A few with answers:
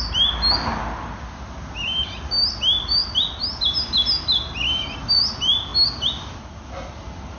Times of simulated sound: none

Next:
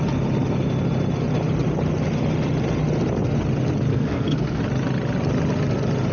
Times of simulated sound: 3.9-4.6 (codec, SNAC)

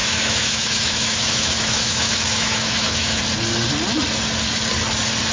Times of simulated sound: 0.0-3.2 (autoencoder, DAC-VAE)

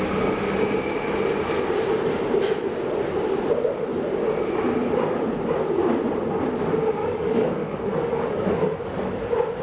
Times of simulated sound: 7.0-9.2 (codec, DAC)

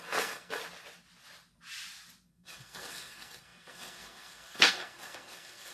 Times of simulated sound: 0.0-0.6 (codec, SNAC); 2.3-5.7

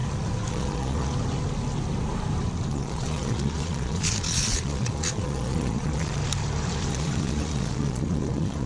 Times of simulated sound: 0.5-1.1 (vocoder, Vocos); 2.7-6.2; 6.9-8.7

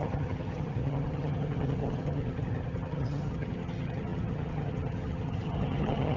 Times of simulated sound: 0.0-6.2 (vocoder, HiFi-GAN)